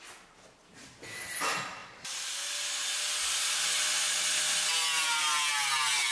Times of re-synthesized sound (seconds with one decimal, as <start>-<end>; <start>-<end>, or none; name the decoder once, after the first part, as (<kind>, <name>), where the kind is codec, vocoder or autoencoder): none